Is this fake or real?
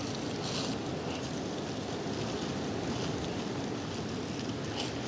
real